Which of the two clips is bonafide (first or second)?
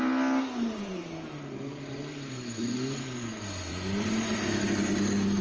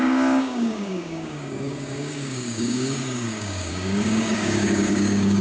first